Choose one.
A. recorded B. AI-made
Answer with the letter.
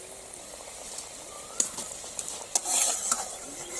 A